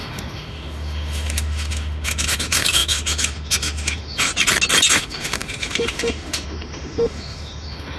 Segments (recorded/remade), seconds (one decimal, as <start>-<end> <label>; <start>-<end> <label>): 0.0-4.3 remade; 4.3-4.9 recorded; 4.9-8.0 remade